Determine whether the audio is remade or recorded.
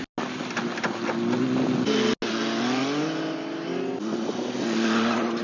recorded